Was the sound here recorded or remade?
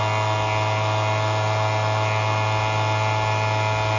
recorded